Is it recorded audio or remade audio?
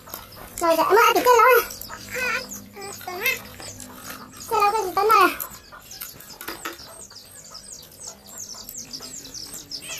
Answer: recorded